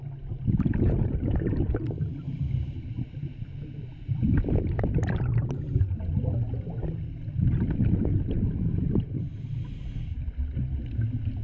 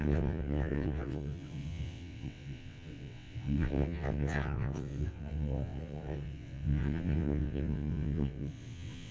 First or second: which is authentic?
first